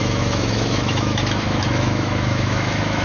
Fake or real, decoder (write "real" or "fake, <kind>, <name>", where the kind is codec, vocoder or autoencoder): fake, autoencoder, DAC-VAE